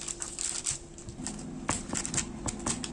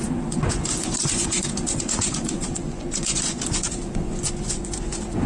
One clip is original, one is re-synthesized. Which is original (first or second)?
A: first